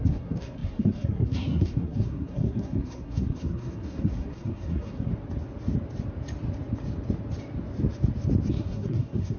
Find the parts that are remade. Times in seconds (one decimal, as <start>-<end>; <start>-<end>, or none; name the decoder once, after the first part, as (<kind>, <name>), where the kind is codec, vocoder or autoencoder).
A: 0.0-5.1 (codec, SNAC); 8.5-9.4